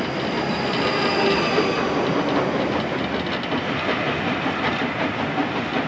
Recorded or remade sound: recorded